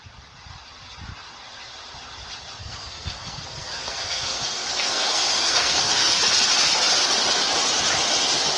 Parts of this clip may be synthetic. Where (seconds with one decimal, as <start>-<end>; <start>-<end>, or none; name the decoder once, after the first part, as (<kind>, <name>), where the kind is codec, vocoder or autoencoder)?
2.6-6.2 (codec, SNAC)